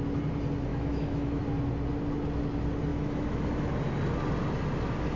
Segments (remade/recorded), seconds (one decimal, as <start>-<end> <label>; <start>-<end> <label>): 0.0-0.7 recorded; 0.7-1.4 remade; 1.4-2.9 recorded; 2.9-3.7 remade; 3.7-5.2 recorded